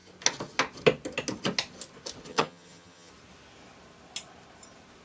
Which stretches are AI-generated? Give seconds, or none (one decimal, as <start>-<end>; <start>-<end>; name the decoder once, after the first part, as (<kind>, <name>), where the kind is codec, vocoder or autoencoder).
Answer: 2.3-3.1 (vocoder, HiFi-GAN)